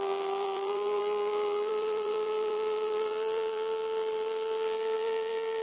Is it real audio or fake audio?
fake